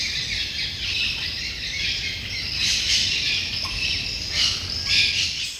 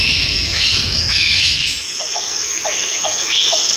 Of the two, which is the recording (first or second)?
first